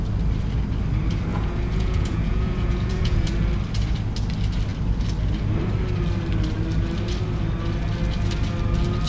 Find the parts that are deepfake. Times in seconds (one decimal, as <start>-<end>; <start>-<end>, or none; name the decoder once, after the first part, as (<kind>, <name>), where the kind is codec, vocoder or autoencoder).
1.3-3.3 (vocoder, Vocos)